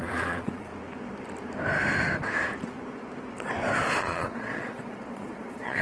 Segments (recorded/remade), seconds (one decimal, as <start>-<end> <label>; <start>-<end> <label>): 0.0-0.7 remade; 0.7-4.0 recorded; 4.0-5.8 remade